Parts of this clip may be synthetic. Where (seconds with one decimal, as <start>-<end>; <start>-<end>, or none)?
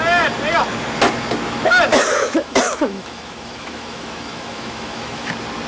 1.9-5.3